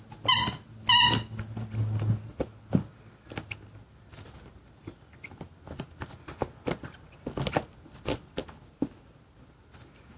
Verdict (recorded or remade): recorded